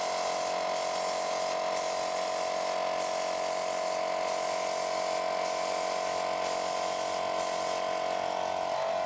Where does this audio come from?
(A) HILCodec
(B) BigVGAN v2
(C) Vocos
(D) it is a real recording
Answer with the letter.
D